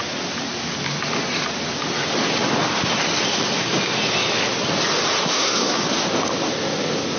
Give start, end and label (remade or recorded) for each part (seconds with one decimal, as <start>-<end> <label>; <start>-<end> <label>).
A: 0.0-5.3 recorded; 5.3-5.8 remade; 5.8-7.2 recorded